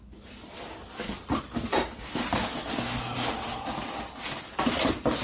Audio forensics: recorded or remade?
recorded